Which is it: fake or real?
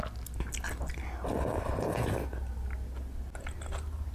real